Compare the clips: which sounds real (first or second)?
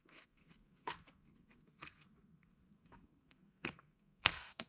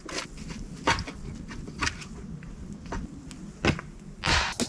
second